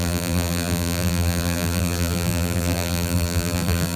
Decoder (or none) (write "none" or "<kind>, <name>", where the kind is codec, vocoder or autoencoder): vocoder, BigVGAN v2